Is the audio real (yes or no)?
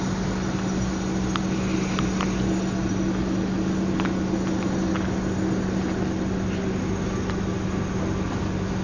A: yes